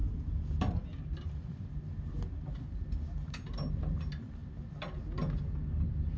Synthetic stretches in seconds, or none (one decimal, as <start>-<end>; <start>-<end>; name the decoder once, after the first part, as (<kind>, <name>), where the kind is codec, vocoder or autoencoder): none